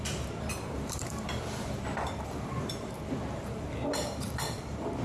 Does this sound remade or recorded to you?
remade